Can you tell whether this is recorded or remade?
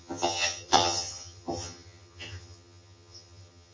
remade